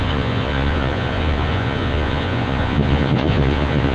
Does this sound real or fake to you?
fake